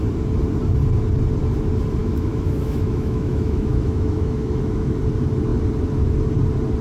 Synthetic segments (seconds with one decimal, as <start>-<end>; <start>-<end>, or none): 2.0-5.0